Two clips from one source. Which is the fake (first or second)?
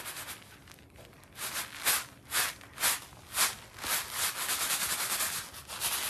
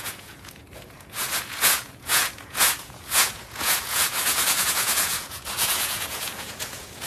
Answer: second